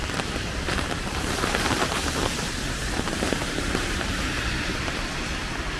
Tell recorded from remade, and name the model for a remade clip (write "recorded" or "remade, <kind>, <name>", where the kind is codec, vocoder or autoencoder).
remade, vocoder, BigVGAN v2